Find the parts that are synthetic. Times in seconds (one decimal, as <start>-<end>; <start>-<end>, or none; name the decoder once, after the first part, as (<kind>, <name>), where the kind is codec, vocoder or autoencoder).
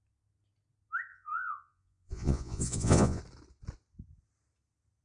1.1-3.2 (vocoder, Vocos)